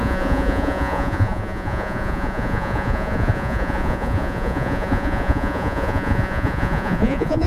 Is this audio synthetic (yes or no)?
yes